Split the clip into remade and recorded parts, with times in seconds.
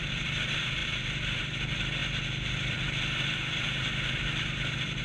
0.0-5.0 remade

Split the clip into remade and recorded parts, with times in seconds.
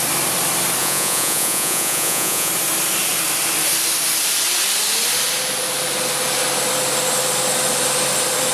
0.0-0.8 recorded; 0.8-2.5 remade; 2.5-8.5 recorded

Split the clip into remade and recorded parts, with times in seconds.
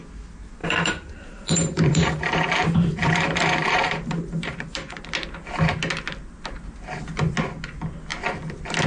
0.0-0.6 recorded; 0.6-5.0 remade; 5.0-8.9 recorded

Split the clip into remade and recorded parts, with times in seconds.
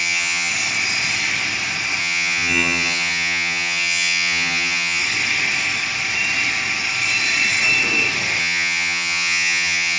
0.0-0.5 remade; 0.5-2.0 recorded; 2.0-5.0 remade; 5.0-8.4 recorded; 8.4-10.0 remade